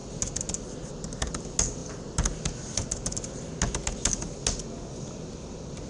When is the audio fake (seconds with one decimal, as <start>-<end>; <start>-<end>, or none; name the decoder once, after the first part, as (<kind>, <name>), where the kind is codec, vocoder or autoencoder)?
none